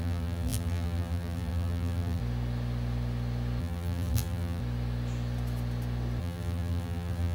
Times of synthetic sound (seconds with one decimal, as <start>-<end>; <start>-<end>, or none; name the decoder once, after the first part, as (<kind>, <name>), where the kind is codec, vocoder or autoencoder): 0.0-2.2 (vocoder, BigVGAN v2); 3.6-4.6; 6.2-7.3